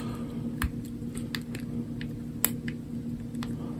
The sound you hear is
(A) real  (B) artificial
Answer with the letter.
A